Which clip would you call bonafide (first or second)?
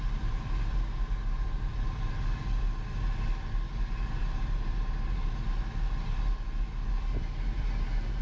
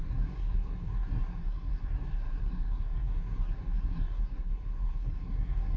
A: first